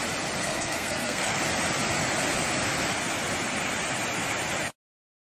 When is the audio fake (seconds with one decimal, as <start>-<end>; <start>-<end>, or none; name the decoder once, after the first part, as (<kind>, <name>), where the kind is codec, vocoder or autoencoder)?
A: 0.4-1.4 (codec, SNAC)

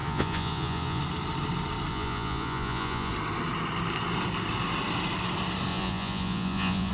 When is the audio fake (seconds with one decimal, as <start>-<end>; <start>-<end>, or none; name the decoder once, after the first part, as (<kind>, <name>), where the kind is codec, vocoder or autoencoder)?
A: 0.0-1.0 (vocoder, Vocos); 1.9-3.1; 5.7-6.9

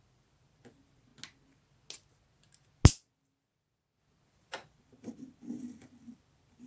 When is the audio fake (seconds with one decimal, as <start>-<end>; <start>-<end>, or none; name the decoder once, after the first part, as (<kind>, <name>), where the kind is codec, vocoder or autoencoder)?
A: 0.0-1.1 (vocoder, BigVGAN v2); 4.3-6.7

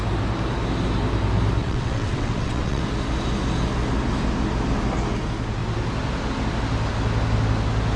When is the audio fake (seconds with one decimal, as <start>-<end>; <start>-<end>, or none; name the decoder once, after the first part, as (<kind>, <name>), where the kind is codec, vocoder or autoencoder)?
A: 1.6-2.8 (vocoder, WaveNeXt)

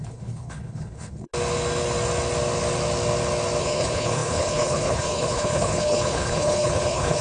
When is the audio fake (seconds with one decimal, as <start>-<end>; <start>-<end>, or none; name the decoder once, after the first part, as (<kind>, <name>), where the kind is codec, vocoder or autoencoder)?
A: 0.0-1.3 (codec, HILCodec); 3.6-7.2

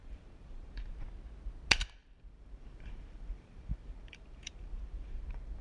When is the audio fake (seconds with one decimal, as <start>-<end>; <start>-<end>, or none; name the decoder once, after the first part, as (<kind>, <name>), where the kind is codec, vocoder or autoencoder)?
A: 0.0-0.9 (vocoder, BigVGAN v2); 2.0-5.6

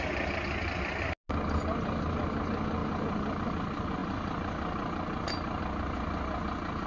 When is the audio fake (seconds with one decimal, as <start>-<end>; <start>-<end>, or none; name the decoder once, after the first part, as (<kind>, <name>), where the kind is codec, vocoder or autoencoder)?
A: none

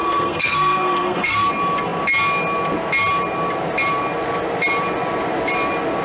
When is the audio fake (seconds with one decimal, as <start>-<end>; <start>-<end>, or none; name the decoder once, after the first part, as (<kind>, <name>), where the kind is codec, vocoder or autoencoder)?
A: 0.0-1.5 (codec, SNAC)